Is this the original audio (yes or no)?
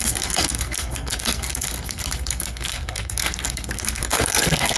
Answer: no